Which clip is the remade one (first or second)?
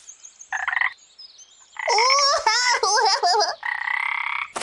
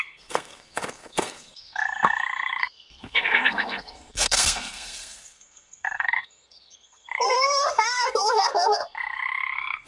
second